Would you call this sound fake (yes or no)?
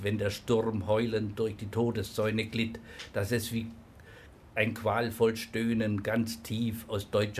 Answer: no